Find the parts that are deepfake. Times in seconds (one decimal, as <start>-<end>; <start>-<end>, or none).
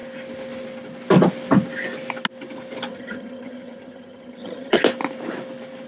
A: 2.9-4.8